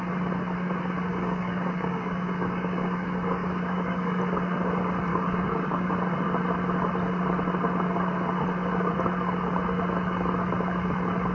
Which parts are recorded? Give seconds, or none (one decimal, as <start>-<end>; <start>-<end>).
0.0-1.1; 4.2-5.1; 5.9-11.3